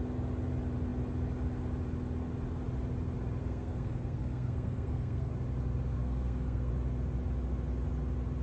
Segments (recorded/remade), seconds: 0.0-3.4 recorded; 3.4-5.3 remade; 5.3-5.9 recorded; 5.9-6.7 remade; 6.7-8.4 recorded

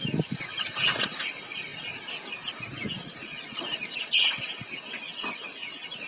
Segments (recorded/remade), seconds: 0.0-3.2 recorded; 3.2-4.7 remade; 4.7-6.1 recorded

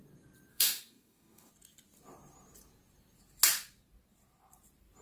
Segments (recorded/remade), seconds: 0.0-0.5 recorded; 0.5-1.5 remade; 1.5-5.0 recorded

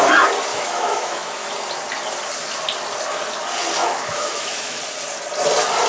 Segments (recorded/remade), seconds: 0.0-0.5 recorded; 0.5-1.5 remade; 1.5-3.8 recorded; 3.8-4.8 remade; 4.8-5.9 recorded

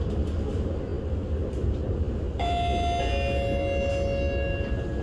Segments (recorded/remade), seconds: 0.0-5.0 recorded